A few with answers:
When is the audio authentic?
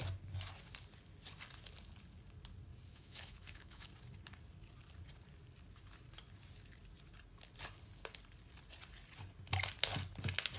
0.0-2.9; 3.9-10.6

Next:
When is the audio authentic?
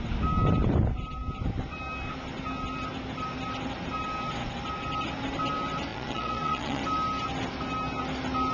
0.0-5.9; 6.8-8.5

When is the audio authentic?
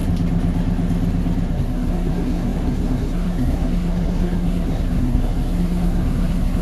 0.0-1.5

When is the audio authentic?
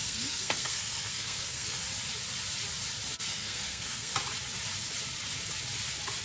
1.8-3.2; 4.1-6.2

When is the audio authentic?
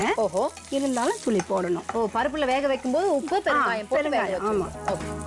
0.0-5.3